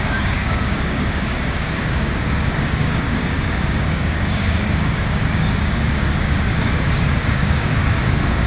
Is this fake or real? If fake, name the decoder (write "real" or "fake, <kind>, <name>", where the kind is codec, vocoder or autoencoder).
fake, codec, DAC